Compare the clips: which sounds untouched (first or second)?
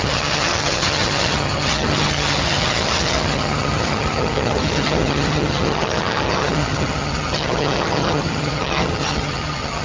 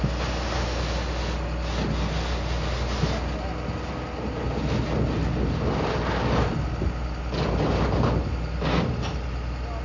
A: second